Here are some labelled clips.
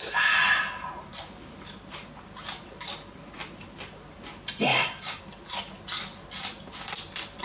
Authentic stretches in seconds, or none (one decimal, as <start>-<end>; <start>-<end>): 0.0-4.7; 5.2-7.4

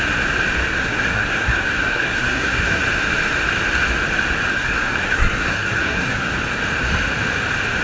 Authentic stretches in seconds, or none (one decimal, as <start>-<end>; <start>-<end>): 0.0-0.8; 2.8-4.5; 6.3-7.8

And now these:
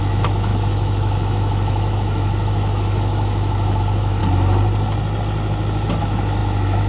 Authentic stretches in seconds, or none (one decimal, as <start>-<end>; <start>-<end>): 4.2-6.0

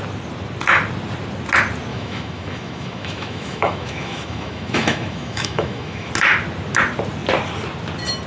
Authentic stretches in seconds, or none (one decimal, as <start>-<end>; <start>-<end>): 0.0-1.9; 6.1-8.3

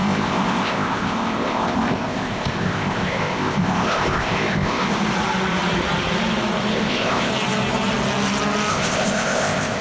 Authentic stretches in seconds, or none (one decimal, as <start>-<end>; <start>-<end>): 5.0-6.7; 7.3-8.7